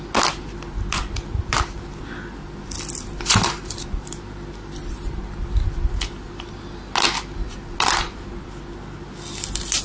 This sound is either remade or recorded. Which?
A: recorded